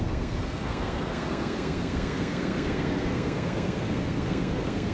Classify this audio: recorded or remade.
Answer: remade